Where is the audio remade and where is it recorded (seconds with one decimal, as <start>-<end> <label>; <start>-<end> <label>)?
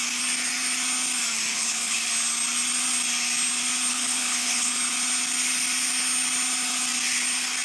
0.0-1.5 recorded; 1.5-2.1 remade; 2.1-3.9 recorded; 3.9-4.7 remade; 4.7-7.6 recorded